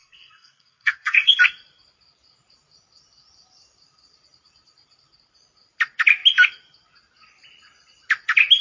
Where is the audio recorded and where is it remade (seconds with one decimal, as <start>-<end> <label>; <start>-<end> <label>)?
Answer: 0.0-1.4 remade; 1.4-8.6 recorded